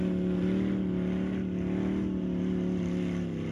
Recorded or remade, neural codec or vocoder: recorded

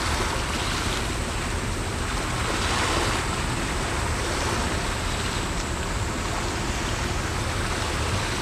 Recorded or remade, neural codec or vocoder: recorded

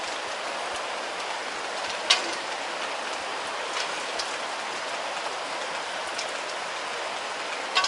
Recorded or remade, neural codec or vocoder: recorded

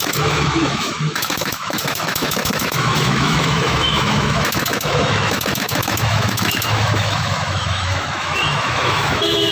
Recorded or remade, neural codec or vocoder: remade, autoencoder, DAC-VAE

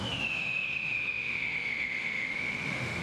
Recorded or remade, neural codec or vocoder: remade, autoencoder, DAC-VAE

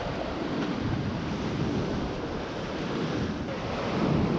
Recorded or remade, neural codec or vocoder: recorded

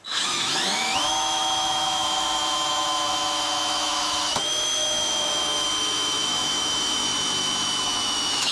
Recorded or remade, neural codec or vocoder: remade, autoencoder, DAC-VAE